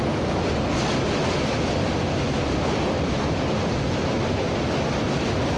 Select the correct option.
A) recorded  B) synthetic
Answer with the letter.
A